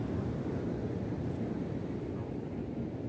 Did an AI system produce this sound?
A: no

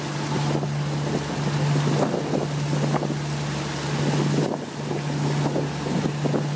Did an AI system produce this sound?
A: no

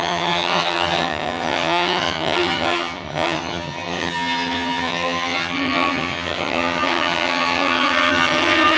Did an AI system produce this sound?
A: yes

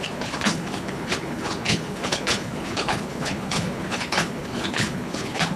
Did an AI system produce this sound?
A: yes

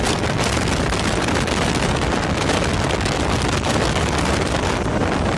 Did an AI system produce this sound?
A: no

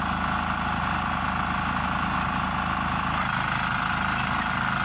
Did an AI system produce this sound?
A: no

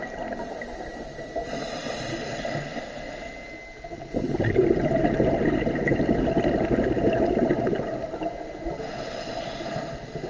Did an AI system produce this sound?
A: no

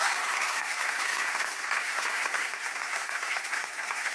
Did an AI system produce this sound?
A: yes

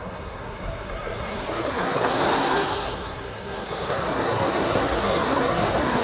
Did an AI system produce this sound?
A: yes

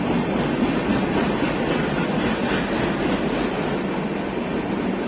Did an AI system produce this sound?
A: no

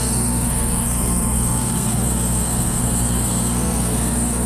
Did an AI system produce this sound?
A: yes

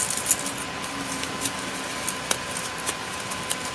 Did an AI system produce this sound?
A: no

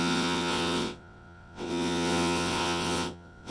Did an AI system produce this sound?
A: yes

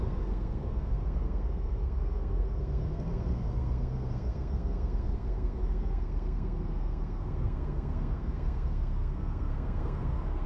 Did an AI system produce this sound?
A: yes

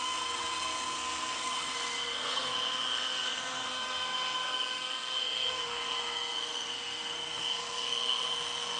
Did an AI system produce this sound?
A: yes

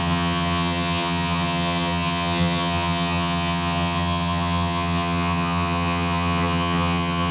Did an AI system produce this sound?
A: yes